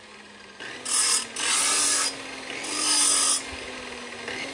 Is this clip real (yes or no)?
yes